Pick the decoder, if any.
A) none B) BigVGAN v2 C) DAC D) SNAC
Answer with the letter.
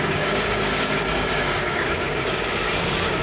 C